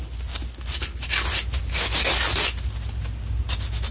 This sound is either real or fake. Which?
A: real